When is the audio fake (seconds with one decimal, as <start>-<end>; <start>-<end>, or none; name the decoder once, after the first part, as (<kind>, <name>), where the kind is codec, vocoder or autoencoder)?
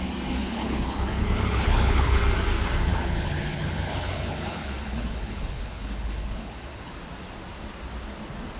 0.4-2.2 (codec, HILCodec); 2.9-6.9